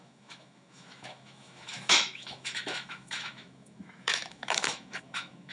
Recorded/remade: remade